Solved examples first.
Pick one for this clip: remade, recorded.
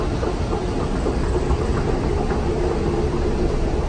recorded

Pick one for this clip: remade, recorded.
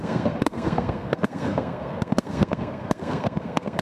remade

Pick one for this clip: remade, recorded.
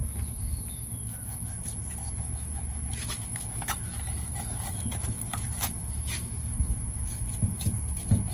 remade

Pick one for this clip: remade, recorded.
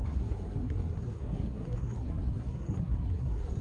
remade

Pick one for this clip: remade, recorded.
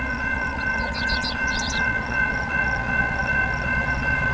remade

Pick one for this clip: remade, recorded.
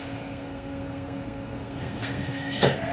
remade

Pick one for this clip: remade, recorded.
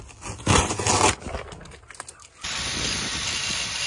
recorded